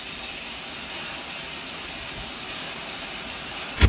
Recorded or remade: recorded